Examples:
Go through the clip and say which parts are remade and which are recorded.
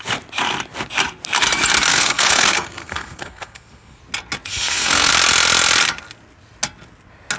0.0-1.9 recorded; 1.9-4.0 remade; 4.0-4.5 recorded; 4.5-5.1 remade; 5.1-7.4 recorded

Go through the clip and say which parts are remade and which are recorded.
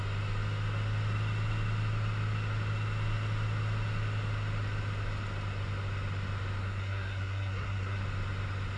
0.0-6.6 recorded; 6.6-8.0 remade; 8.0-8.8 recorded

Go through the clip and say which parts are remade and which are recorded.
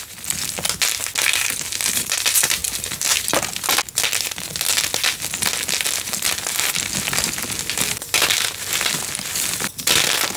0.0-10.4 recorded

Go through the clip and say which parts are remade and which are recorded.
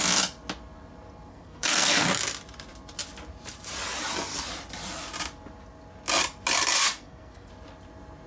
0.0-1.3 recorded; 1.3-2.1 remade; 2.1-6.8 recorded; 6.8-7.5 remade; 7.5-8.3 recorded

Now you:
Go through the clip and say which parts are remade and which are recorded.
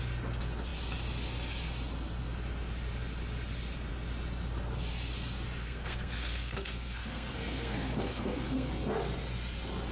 0.0-5.6 recorded; 5.6-8.7 remade; 8.7-9.9 recorded